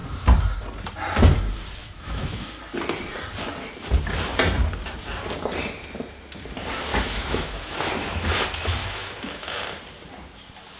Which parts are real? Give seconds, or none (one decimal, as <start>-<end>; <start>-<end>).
0.0-1.8; 2.5-6.9; 7.9-8.8; 9.6-10.8